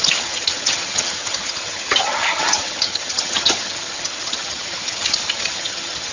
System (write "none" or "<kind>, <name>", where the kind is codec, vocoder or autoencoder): vocoder, HiFi-GAN